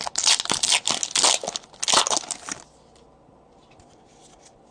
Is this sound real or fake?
real